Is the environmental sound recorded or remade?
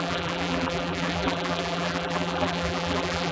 remade